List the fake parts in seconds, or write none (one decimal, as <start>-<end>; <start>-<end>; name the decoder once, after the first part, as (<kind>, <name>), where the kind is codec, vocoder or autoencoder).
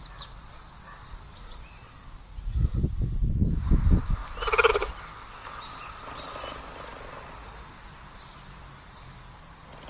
2.2-2.8 (vocoder, Vocos)